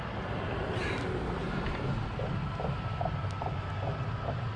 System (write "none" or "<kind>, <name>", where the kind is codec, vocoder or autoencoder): none